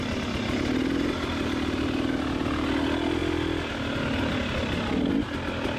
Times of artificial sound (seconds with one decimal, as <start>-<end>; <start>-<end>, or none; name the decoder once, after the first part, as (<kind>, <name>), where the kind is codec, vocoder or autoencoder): none

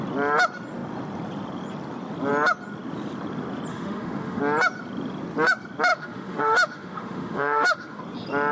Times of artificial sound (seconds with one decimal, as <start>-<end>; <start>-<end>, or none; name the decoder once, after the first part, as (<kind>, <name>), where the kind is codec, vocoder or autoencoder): 3.7-4.4 (autoencoder, DAC-VAE); 5.9-8.0

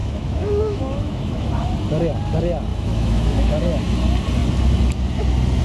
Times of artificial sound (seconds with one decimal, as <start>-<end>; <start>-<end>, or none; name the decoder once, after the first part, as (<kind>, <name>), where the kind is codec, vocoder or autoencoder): 0.0-1.7 (autoencoder, DAC-VAE); 2.7-3.8

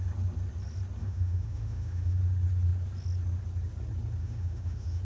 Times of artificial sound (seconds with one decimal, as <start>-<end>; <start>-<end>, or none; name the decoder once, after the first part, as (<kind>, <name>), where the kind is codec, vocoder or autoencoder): 1.0-2.2 (autoencoder, DAC-VAE); 4.2-5.0

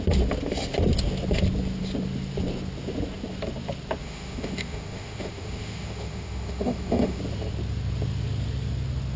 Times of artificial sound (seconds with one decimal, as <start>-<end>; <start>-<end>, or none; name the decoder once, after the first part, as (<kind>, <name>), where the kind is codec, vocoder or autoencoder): 4.0-7.2 (autoencoder, DAC-VAE)

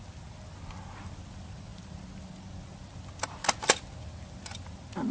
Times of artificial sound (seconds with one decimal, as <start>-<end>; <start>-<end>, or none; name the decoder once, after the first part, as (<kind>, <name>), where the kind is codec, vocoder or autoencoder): none